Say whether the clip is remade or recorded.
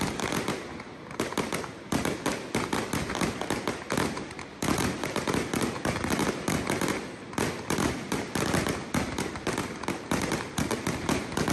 recorded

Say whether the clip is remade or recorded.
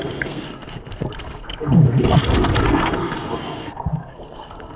remade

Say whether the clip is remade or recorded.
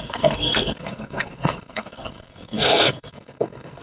remade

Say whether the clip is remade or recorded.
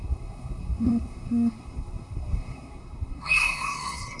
remade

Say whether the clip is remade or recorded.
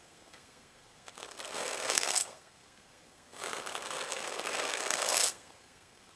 remade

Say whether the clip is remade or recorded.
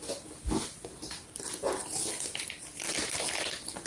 recorded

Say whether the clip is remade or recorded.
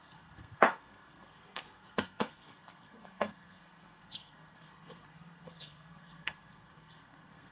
remade